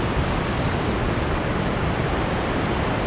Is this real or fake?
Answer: real